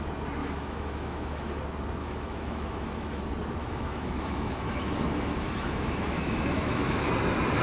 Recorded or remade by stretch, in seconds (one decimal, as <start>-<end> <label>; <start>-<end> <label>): 0.0-0.4 recorded; 0.4-1.6 remade; 1.6-2.0 recorded; 2.0-3.2 remade; 3.2-3.6 recorded; 3.6-7.1 remade; 7.1-7.6 recorded